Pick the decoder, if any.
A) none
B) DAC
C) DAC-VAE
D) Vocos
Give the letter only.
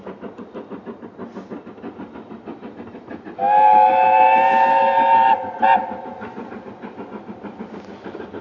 A